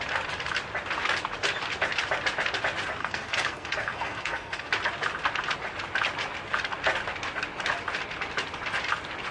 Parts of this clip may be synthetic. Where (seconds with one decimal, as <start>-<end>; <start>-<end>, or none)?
3.0-4.7